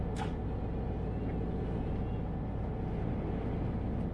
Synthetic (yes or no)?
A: no